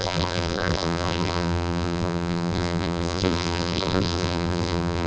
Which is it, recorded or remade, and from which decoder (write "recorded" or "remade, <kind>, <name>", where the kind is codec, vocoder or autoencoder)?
remade, vocoder, BigVGAN v2